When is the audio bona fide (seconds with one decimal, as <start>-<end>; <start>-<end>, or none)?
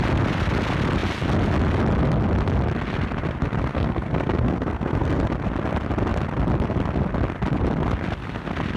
0.0-3.7; 5.2-8.8